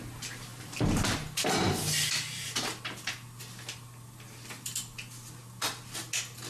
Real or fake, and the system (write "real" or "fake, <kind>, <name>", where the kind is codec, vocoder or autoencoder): real